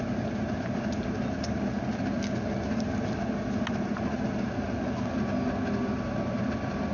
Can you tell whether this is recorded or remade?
recorded